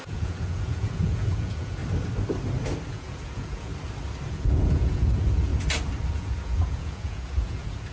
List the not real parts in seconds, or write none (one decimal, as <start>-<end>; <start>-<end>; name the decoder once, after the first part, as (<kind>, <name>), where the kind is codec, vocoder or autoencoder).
0.0-1.8 (vocoder, Vocos); 2.9-3.7; 4.3-5.5; 6.1-7.9